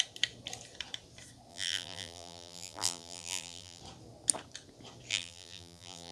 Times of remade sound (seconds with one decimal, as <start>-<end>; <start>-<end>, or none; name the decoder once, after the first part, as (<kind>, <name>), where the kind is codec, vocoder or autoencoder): 1.5-3.8 (vocoder, BigVGAN v2); 5.1-6.1